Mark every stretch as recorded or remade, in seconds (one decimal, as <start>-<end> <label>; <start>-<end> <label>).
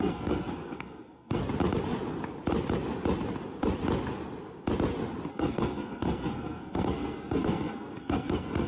0.0-1.4 remade; 1.4-5.3 recorded; 5.3-8.7 remade